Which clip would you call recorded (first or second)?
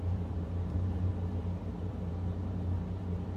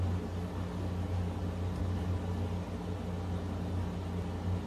second